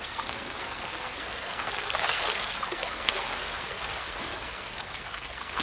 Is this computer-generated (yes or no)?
yes